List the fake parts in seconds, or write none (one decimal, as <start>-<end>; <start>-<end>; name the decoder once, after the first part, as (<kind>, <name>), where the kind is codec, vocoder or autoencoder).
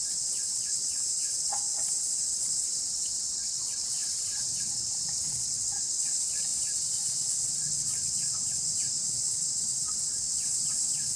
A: 0.0-11.2 (vocoder, WaveNeXt)